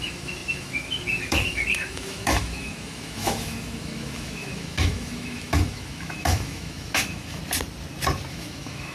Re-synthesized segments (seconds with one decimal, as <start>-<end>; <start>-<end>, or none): 0.0-7.4; 8.3-8.9